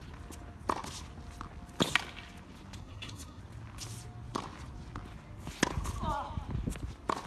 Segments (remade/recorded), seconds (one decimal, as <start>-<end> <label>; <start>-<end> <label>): 0.0-2.8 recorded; 2.8-3.4 remade; 3.4-7.3 recorded